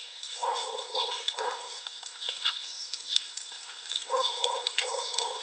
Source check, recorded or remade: remade